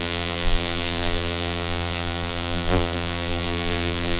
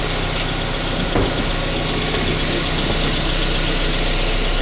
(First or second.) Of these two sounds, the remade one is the first